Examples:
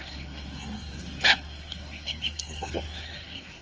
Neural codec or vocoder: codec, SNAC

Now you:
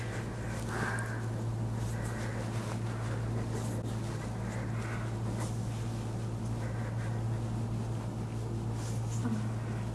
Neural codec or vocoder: none